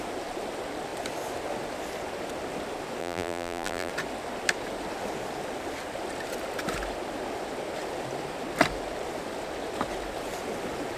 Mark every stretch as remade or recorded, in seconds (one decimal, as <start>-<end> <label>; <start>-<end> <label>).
0.0-3.0 recorded; 3.0-3.9 remade; 3.9-11.0 recorded